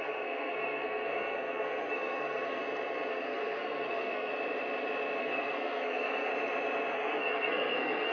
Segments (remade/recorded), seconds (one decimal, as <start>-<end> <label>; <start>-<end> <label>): 0.0-2.6 remade; 2.6-3.1 recorded; 3.1-4.3 remade; 4.3-5.2 recorded; 5.2-6.3 remade; 6.3-6.9 recorded; 6.9-8.1 remade